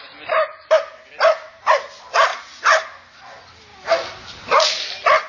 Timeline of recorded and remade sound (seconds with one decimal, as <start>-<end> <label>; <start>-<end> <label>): 0.0-5.3 recorded